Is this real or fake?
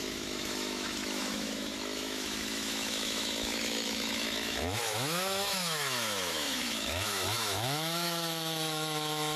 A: fake